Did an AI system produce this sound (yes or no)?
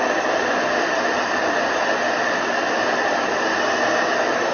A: no